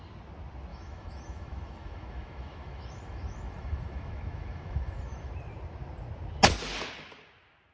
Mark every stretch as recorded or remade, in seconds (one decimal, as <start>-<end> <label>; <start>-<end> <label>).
0.0-0.7 recorded; 0.7-5.3 remade; 5.3-7.7 recorded